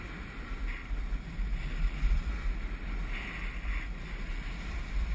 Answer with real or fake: real